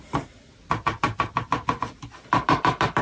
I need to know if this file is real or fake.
real